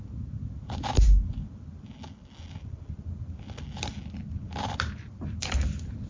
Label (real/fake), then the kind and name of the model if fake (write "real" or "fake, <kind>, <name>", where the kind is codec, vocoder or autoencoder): real